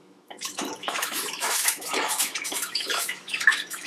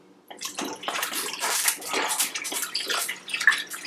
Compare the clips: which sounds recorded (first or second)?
second